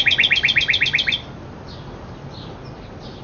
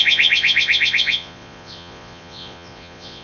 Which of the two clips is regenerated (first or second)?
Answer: second